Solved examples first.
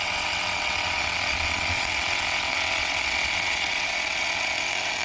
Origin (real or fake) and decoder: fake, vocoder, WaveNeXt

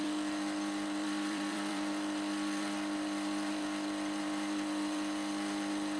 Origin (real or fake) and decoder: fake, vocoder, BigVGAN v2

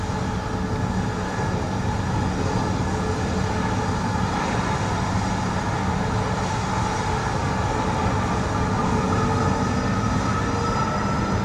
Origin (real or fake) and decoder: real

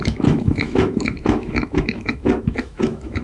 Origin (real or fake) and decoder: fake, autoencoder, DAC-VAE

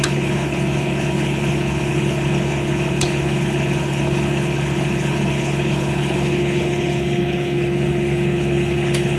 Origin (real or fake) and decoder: fake, codec, HILCodec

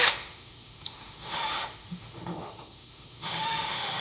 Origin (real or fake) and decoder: fake, autoencoder, DAC-VAE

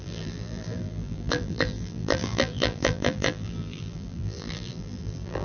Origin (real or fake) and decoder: fake, vocoder, BigVGAN v2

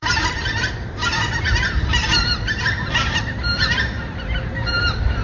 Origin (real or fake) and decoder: fake, vocoder, BigVGAN v2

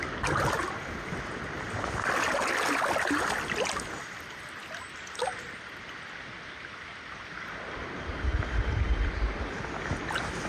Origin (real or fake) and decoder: real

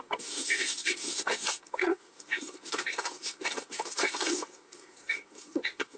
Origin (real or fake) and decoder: fake, codec, SNAC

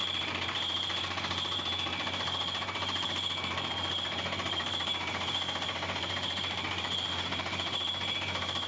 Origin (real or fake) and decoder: fake, vocoder, BigVGAN v2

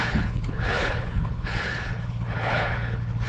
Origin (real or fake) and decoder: fake, codec, HILCodec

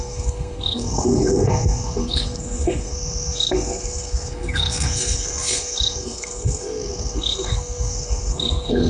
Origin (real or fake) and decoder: fake, codec, SNAC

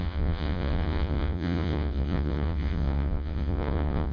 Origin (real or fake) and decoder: fake, vocoder, Vocos